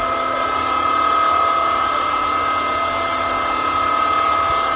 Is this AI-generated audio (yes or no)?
no